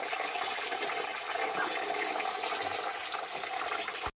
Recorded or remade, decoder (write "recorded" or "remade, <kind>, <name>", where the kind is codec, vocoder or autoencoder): recorded